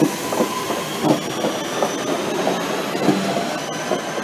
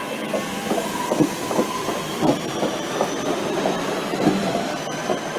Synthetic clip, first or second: second